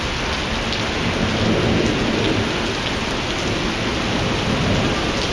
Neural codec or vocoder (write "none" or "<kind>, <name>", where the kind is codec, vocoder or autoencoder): none